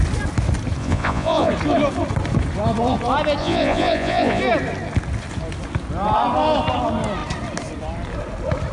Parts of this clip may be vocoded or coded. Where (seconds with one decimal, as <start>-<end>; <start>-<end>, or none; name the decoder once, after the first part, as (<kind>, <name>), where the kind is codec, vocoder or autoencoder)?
0.8-1.5 (vocoder, Vocos); 3.4-4.4